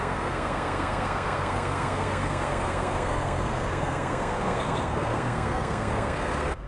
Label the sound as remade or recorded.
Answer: remade